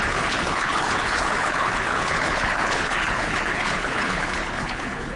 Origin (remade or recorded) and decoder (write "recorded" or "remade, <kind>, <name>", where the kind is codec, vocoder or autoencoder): remade, codec, HILCodec